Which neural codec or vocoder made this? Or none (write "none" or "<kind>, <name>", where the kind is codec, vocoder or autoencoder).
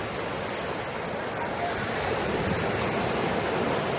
none